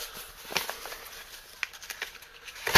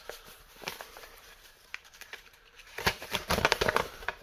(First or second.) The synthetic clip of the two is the second